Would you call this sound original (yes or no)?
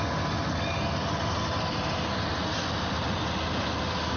yes